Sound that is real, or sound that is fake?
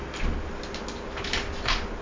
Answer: real